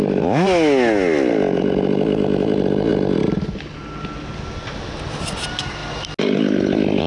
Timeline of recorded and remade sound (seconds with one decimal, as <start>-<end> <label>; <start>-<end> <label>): 0.0-7.1 recorded